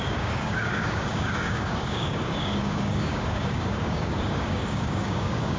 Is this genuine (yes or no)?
no